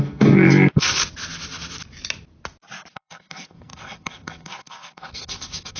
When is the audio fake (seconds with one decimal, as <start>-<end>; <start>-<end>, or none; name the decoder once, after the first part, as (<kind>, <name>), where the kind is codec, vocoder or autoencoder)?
0.0-1.0 (codec, SNAC); 2.9-5.8